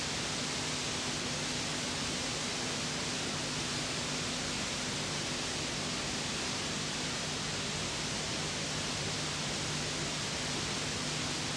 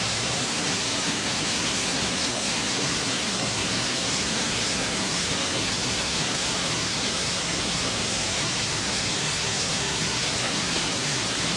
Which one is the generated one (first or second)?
second